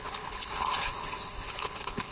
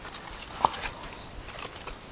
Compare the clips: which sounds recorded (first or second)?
second